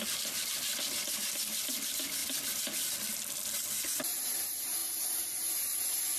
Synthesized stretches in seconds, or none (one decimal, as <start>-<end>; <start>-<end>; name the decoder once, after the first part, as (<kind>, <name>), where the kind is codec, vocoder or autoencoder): none